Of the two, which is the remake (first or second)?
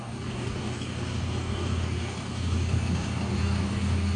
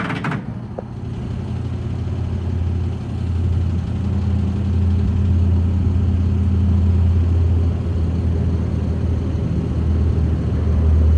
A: first